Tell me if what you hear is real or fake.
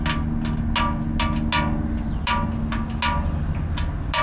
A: real